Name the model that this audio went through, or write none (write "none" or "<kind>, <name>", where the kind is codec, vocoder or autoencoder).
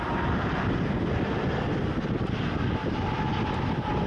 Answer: none